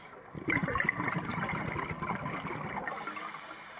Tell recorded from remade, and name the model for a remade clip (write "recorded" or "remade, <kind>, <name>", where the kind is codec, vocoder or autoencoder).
recorded